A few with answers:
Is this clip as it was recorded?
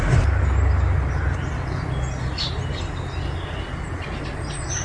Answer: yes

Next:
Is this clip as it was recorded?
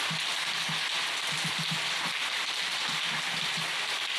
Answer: no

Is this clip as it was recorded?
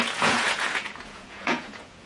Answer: no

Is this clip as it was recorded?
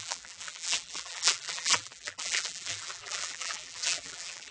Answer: no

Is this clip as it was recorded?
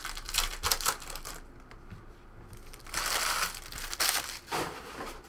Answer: yes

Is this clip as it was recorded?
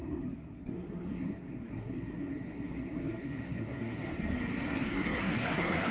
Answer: no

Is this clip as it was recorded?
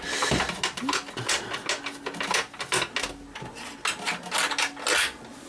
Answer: yes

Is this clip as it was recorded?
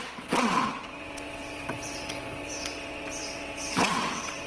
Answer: no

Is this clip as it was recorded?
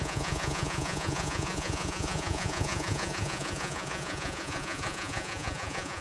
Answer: no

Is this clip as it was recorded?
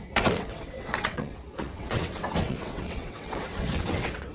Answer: no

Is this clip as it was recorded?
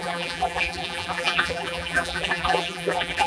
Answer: no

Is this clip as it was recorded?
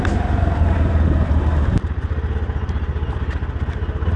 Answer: yes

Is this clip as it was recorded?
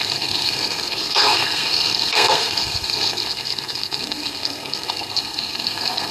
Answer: no